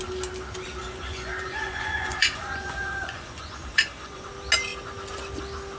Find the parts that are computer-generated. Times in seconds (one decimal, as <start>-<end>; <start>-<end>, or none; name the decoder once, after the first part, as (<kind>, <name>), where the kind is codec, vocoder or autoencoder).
0.8-4.3 (vocoder, Vocos)